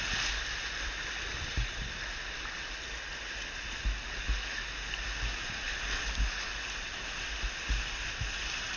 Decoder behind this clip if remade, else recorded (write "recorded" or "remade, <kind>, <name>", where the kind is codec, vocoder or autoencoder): recorded